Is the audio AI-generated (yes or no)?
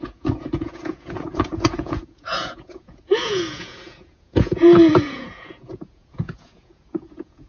yes